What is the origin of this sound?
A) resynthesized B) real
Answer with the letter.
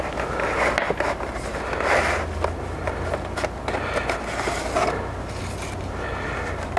B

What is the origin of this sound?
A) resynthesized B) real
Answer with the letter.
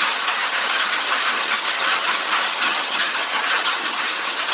A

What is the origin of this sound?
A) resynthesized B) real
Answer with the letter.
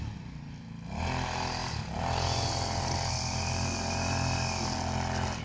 B